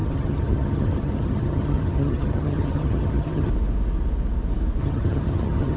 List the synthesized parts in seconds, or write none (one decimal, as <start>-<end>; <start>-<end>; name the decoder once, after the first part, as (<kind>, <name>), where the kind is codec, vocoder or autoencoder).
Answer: 0.0-3.5 (vocoder, HiFi-GAN); 4.8-5.8